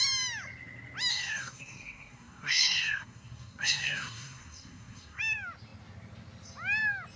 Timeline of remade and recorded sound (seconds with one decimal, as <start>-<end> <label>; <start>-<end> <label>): 0.0-1.1 recorded; 1.1-5.2 remade; 5.2-7.2 recorded